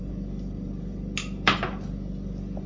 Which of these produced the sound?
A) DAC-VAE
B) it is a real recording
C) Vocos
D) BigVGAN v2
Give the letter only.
B